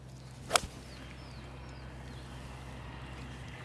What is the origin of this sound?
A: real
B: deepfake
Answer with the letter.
A